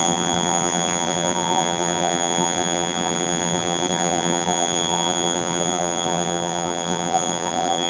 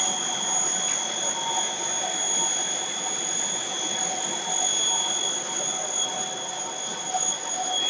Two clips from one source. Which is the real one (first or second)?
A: second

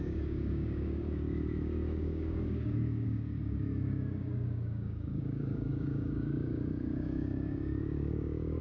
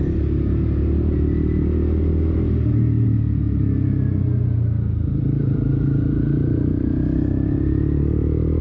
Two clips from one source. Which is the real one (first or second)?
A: second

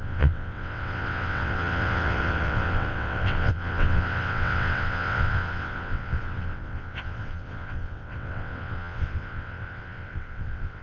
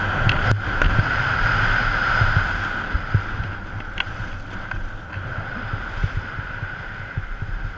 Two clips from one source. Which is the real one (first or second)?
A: second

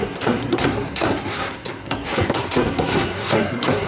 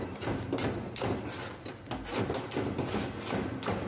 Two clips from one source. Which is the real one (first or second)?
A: second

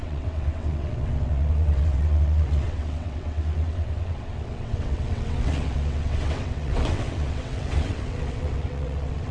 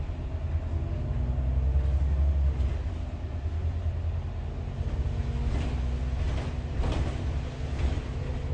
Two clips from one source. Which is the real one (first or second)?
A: second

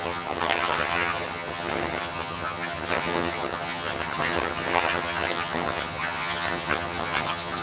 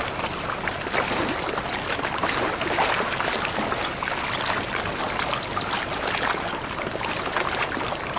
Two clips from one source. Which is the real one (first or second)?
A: second